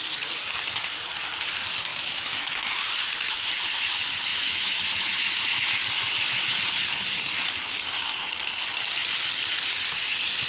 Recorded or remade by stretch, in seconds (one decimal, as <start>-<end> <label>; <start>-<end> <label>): 0.0-1.9 recorded; 1.9-2.7 remade; 2.7-4.3 recorded; 4.3-4.8 remade; 4.8-10.5 recorded

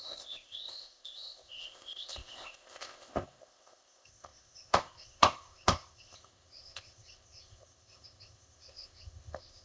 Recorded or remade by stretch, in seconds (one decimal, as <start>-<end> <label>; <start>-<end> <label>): 0.0-9.6 remade

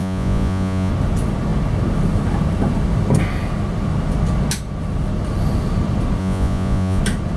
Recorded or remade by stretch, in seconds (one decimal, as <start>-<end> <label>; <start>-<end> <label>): 0.0-0.9 remade; 0.9-6.2 recorded; 6.2-7.0 remade; 7.0-7.4 recorded

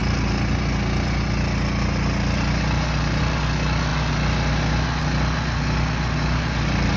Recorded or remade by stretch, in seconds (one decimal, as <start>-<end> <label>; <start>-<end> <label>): 0.0-7.0 recorded

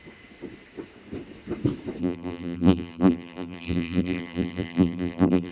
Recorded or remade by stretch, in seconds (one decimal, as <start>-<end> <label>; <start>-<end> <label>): 0.0-2.0 recorded; 2.0-5.5 remade

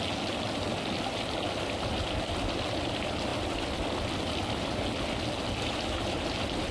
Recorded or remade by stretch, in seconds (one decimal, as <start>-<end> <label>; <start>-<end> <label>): 0.0-6.7 recorded